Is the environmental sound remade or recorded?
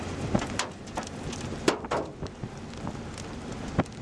recorded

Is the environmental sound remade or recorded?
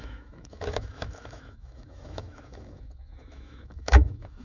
remade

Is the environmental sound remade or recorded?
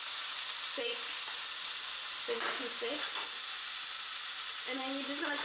recorded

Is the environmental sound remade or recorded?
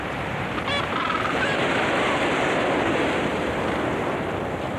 recorded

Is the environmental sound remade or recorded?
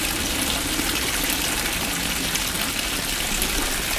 recorded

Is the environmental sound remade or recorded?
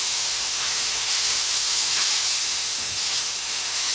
remade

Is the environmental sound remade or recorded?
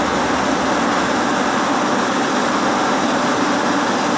recorded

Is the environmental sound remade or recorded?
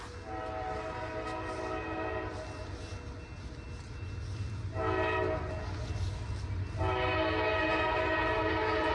recorded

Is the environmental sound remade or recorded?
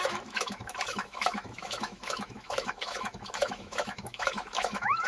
remade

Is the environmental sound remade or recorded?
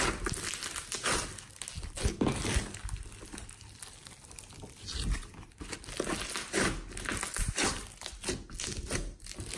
recorded